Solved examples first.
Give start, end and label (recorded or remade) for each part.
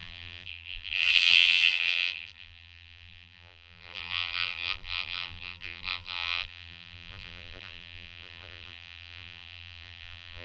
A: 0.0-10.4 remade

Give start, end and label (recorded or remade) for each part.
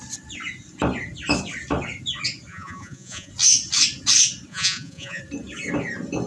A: 0.0-2.5 recorded; 2.5-3.3 remade; 3.3-4.5 recorded; 4.5-5.2 remade; 5.2-6.3 recorded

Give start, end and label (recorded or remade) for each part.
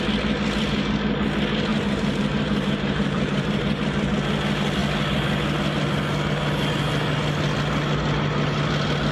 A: 0.0-1.7 recorded; 1.7-4.1 remade; 4.1-9.1 recorded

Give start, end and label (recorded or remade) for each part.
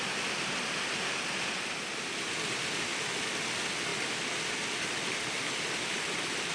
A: 0.0-6.5 recorded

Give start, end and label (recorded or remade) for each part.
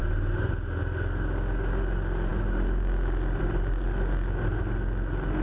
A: 0.0-5.4 recorded